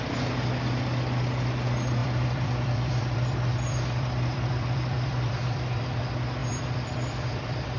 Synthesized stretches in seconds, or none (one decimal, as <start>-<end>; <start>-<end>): 2.0-6.0; 6.4-7.8